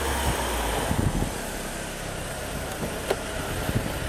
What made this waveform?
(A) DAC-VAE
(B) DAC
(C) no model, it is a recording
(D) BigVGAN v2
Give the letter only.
C